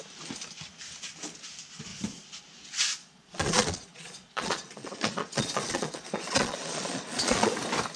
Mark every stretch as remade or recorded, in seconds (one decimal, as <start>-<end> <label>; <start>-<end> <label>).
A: 0.0-3.0 recorded; 3.0-7.5 remade; 7.5-8.0 recorded